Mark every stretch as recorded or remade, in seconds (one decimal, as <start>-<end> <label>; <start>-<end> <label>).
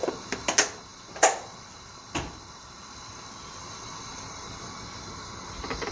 0.0-0.9 recorded; 0.9-4.4 remade; 4.4-5.9 recorded